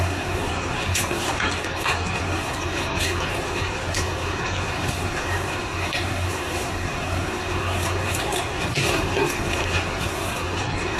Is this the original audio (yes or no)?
no